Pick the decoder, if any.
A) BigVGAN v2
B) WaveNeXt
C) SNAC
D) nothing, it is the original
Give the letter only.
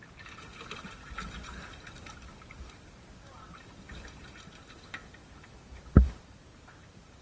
A